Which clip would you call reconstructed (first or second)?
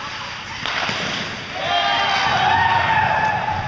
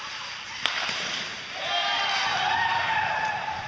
second